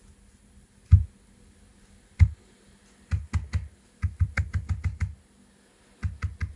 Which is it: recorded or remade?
recorded